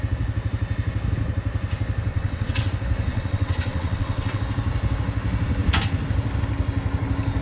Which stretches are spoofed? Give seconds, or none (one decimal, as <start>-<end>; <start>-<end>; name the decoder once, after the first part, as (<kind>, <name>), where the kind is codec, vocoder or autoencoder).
2.1-2.7 (vocoder, WaveNeXt); 3.1-4.4